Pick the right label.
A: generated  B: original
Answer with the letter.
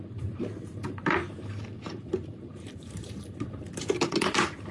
A